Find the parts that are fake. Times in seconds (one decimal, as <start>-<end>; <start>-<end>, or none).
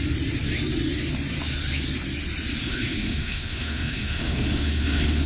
2.6-5.3